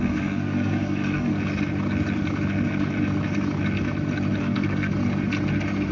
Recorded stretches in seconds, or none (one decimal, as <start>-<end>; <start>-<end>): 1.3-4.4; 4.9-5.9